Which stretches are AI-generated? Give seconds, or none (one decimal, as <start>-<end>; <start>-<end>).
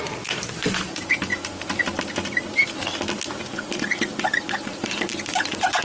none